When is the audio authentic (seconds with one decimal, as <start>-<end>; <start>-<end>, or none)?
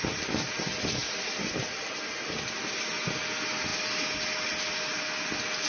0.0-5.7